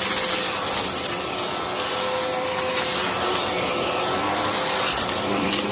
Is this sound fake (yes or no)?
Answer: no